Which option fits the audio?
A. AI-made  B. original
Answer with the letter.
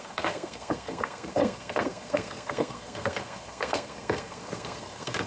A